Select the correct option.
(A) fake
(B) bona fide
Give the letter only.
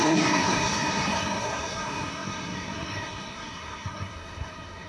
A